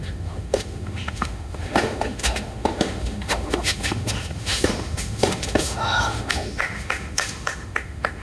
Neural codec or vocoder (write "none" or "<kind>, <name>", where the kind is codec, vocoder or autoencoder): autoencoder, DAC-VAE